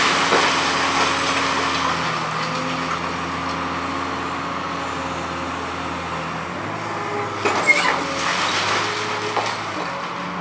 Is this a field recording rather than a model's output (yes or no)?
yes